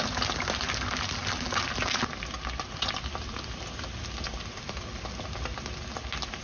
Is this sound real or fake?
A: real